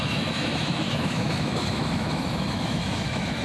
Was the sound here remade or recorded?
remade